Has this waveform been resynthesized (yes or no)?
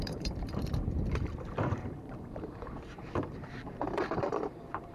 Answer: yes